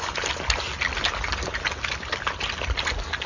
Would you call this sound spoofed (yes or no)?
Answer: no